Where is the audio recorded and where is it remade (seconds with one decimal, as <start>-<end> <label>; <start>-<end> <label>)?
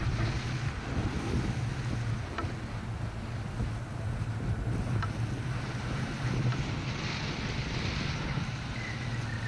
0.0-9.5 recorded